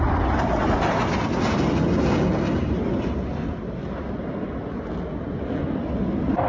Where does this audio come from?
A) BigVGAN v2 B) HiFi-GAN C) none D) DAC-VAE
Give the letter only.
C